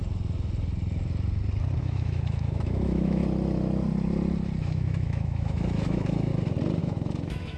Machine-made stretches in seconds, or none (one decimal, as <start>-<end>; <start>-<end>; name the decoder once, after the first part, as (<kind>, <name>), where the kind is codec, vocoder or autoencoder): 1.8-3.2 (autoencoder, DAC-VAE); 4.6-6.3; 6.8-7.6